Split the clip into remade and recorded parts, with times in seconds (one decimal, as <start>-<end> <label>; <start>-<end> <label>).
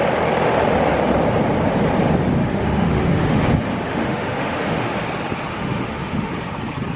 0.0-2.4 recorded; 2.4-3.4 remade; 3.4-3.9 recorded; 3.9-5.0 remade; 5.0-5.5 recorded; 5.5-6.3 remade; 6.3-7.0 recorded